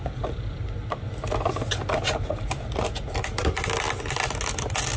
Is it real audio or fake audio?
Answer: real